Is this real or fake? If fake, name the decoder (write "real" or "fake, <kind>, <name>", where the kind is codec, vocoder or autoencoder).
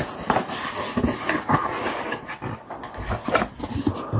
real